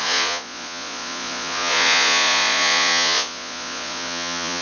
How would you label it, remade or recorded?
remade